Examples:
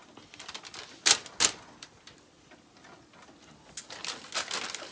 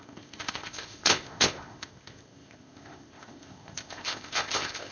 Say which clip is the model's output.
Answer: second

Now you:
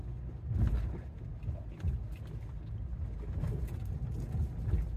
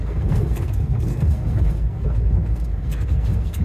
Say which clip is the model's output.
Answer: second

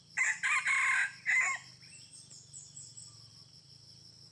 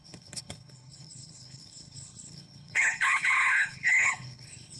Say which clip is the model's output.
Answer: second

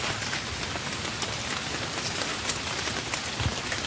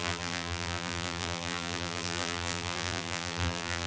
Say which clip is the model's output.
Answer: second